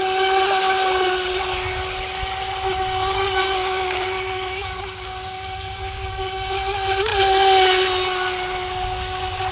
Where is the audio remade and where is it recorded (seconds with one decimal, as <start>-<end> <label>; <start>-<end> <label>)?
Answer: 0.0-3.1 recorded; 3.1-6.5 remade; 6.5-9.5 recorded

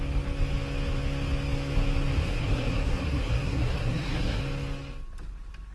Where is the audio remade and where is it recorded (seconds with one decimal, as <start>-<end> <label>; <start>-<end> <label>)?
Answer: 0.0-2.2 recorded; 2.2-4.4 remade; 4.4-5.7 recorded

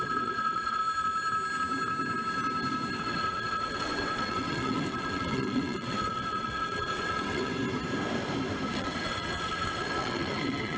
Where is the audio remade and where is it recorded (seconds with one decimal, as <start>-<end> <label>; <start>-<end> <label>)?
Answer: 0.0-0.8 remade; 0.8-3.0 recorded; 3.0-7.5 remade; 7.5-8.7 recorded; 8.7-10.8 remade

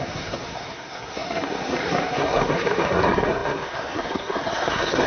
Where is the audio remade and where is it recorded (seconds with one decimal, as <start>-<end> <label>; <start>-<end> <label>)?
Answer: 0.0-5.1 remade

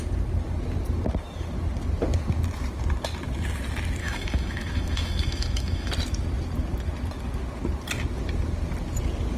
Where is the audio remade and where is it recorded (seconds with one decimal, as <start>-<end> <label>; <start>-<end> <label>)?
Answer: 0.0-4.0 recorded; 4.0-5.9 remade; 5.9-9.4 recorded